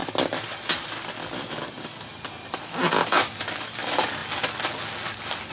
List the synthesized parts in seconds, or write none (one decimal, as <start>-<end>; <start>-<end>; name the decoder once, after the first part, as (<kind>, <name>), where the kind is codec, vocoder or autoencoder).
none